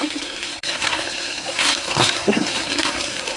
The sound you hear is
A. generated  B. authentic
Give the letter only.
A